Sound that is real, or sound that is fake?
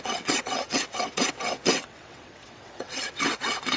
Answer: fake